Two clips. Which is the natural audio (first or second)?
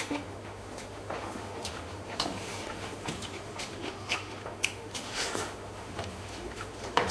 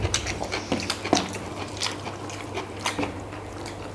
second